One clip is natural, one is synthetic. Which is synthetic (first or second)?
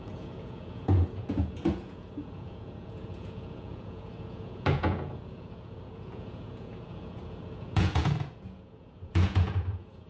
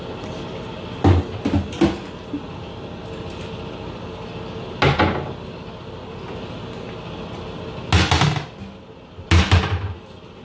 first